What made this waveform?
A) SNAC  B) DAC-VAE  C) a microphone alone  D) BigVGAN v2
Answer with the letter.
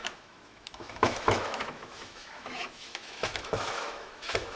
B